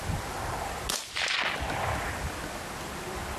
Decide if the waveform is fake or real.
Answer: real